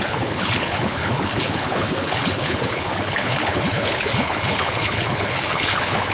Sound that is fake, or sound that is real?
fake